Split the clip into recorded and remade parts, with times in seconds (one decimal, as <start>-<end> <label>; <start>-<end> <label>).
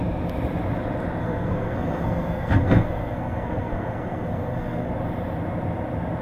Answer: 0.0-1.2 recorded; 1.2-4.9 remade; 4.9-6.2 recorded